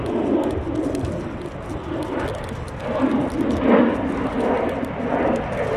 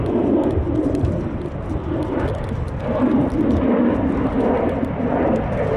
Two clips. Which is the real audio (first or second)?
first